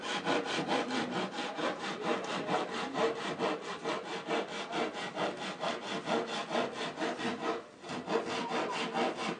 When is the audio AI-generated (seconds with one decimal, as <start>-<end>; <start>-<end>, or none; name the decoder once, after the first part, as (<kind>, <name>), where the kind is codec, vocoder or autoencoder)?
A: 1.6-3.1 (vocoder, BigVGAN v2)